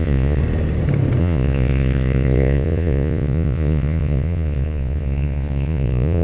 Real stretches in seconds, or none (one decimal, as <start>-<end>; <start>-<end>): 0.4-1.2